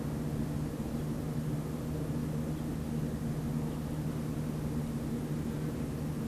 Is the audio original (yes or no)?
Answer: yes